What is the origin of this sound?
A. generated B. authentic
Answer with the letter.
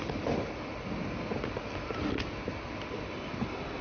B